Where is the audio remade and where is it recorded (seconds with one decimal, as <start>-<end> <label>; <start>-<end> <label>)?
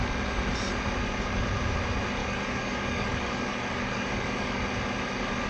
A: 0.0-2.2 recorded; 2.2-4.6 remade; 4.6-5.5 recorded